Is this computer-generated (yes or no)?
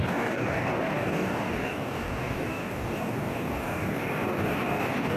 yes